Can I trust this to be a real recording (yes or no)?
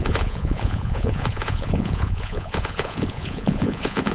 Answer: no